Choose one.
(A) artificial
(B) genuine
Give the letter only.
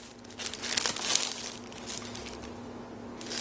B